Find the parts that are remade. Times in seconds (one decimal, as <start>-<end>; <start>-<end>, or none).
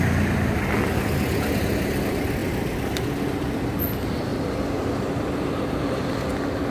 none